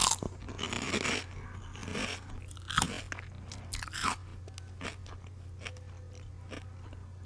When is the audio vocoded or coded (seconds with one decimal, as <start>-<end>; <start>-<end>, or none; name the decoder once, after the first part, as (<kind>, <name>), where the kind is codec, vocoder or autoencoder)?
none